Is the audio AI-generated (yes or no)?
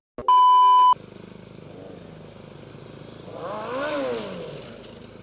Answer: no